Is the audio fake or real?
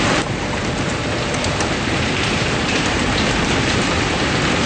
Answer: fake